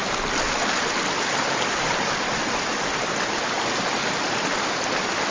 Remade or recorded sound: recorded